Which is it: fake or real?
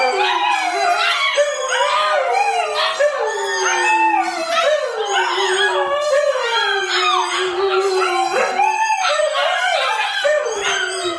real